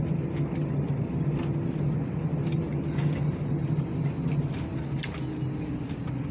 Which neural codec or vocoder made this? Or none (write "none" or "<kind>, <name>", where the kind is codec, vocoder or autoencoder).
none